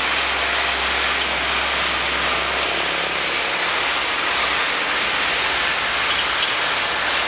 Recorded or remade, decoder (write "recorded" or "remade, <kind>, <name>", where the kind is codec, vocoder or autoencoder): recorded